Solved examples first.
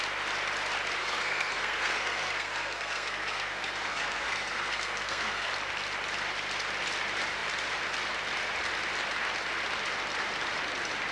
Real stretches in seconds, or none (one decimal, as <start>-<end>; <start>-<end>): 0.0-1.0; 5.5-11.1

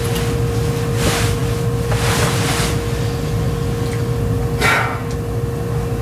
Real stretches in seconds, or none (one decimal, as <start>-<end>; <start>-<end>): 0.0-6.0

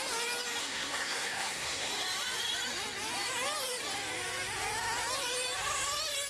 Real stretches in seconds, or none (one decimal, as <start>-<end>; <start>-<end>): 0.0-0.6; 1.9-6.3

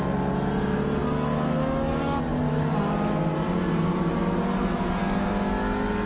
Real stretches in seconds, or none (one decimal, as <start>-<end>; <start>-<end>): 0.0-6.1

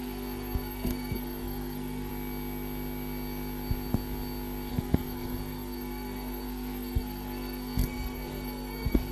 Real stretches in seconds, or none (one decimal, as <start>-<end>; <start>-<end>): 2.1-4.7